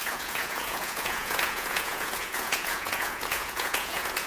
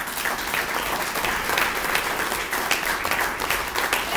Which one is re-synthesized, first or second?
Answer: first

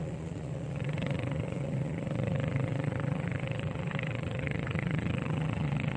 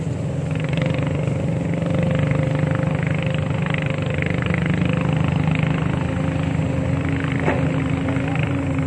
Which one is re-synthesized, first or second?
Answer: first